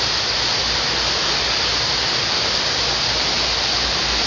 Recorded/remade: recorded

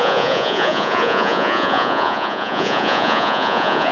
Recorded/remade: remade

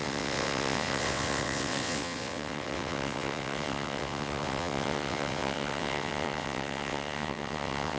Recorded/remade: remade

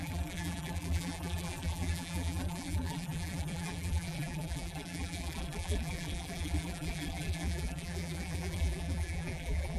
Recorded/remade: remade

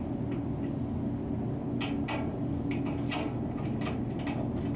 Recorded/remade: recorded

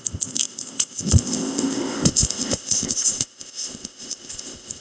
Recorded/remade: remade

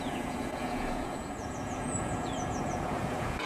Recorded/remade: remade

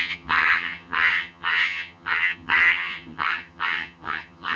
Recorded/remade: remade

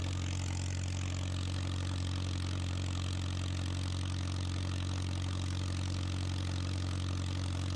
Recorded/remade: recorded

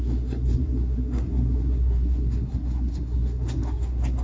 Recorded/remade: remade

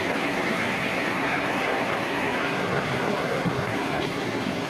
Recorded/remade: remade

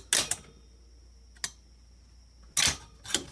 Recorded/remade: recorded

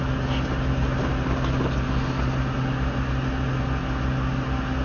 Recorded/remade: recorded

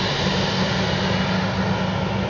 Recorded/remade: recorded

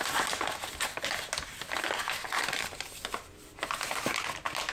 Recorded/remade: recorded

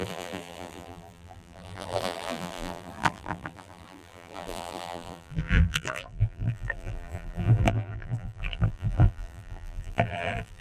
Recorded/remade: remade